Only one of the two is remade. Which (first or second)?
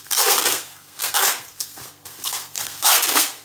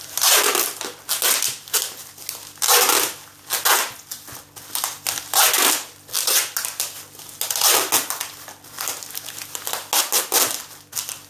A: first